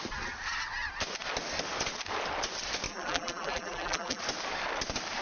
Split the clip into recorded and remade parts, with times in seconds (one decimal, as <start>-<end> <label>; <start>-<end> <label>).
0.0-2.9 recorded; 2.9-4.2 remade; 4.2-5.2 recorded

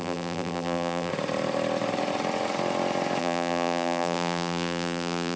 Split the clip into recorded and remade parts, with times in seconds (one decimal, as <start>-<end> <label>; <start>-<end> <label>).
0.0-1.1 remade; 1.1-3.2 recorded; 3.2-5.4 remade

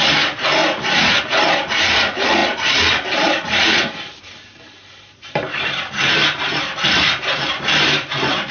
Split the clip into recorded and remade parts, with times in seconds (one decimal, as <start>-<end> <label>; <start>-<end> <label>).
0.0-0.6 remade; 0.6-1.2 recorded; 1.2-8.5 remade

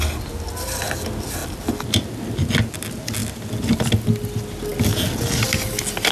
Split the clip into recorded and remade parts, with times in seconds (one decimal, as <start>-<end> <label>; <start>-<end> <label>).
0.0-6.1 recorded

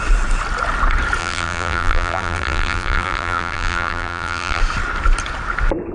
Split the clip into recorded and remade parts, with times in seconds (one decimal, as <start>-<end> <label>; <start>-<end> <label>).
0.0-1.2 recorded; 1.2-4.6 remade; 4.6-5.9 recorded

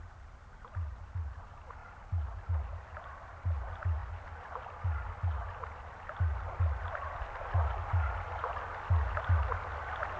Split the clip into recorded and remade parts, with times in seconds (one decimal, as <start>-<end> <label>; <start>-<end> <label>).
0.0-10.2 recorded

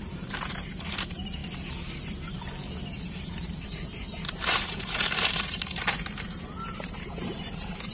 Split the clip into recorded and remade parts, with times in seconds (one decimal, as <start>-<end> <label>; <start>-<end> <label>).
0.0-1.4 remade; 1.4-3.0 recorded; 3.0-7.9 remade

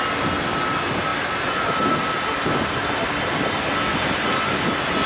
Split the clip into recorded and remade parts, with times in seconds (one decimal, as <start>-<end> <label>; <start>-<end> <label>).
0.0-3.9 recorded; 3.9-4.6 remade; 4.6-5.1 recorded